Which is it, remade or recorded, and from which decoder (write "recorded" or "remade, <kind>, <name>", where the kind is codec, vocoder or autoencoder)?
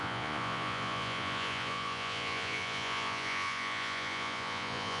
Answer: remade, vocoder, Vocos